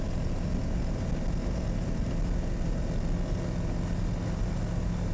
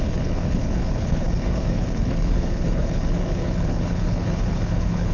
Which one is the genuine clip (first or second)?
first